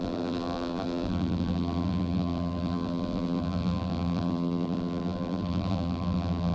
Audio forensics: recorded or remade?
remade